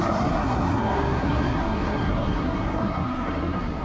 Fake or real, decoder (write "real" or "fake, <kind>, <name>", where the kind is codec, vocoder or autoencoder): fake, codec, SNAC